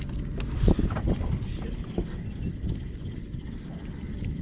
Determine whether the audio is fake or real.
real